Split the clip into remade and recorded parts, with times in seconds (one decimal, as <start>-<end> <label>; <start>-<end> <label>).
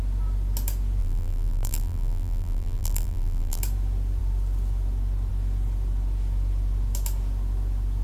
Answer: 0.0-1.0 recorded; 1.0-3.6 remade; 3.6-8.0 recorded